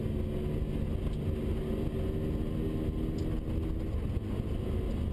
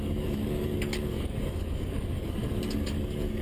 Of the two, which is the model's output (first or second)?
second